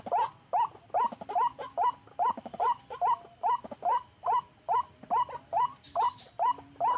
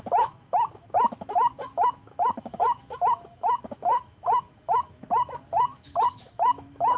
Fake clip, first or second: second